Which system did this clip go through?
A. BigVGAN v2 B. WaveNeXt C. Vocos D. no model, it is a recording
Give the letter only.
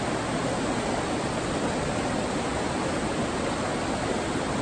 D